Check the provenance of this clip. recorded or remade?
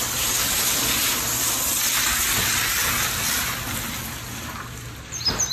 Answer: recorded